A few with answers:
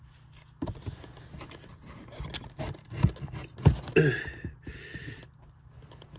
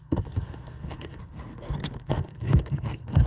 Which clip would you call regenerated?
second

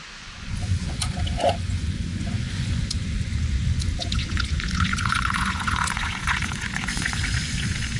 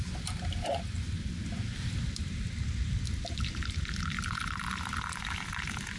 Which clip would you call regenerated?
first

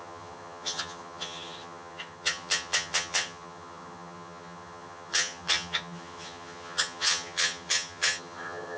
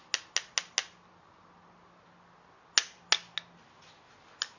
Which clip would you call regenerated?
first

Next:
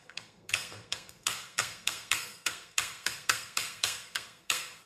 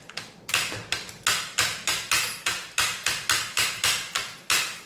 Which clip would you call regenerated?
first